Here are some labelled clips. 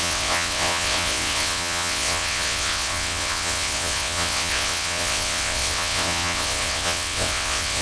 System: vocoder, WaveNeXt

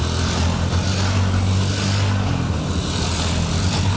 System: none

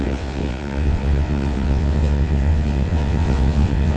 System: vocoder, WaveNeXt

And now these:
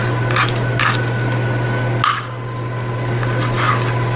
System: none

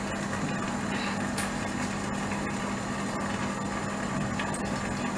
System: none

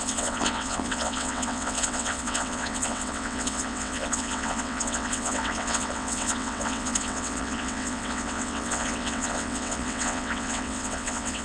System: vocoder, WaveNeXt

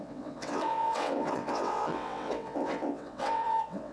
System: vocoder, WaveNeXt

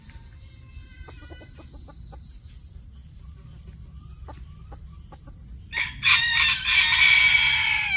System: none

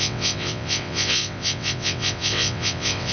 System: vocoder, WaveNeXt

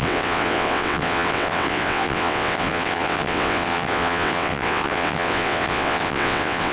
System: vocoder, WaveNeXt